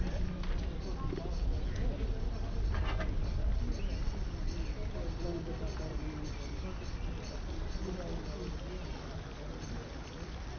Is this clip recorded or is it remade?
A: recorded